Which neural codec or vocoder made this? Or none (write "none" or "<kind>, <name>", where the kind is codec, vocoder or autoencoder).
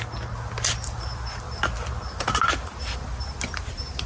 none